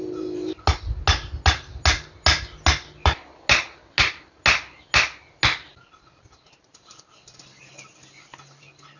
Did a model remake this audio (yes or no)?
no